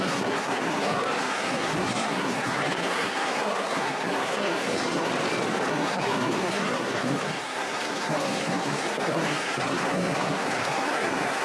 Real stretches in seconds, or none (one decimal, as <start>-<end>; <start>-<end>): 5.1-5.7